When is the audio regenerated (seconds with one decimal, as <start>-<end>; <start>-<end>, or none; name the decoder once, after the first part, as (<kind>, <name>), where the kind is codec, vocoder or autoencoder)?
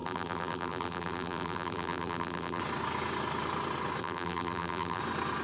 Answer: 0.0-2.6 (vocoder, BigVGAN v2); 4.0-5.0